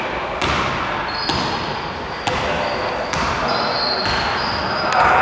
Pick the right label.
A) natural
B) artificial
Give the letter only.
A